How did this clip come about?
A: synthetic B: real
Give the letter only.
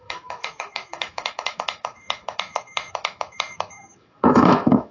A